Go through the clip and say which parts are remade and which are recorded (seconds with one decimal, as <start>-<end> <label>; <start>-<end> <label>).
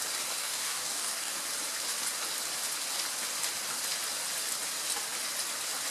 0.0-0.4 recorded; 0.4-1.3 remade; 1.3-5.9 recorded